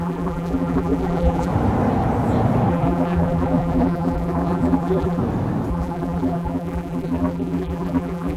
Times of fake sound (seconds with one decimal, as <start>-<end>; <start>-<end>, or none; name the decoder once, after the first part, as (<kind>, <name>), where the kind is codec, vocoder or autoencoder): 0.0-1.5 (vocoder, BigVGAN v2); 2.7-5.2; 5.7-8.4